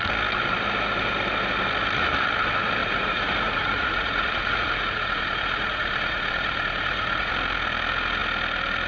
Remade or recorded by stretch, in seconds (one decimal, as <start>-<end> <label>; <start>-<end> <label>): 0.0-2.8 recorded; 2.8-7.3 remade; 7.3-8.9 recorded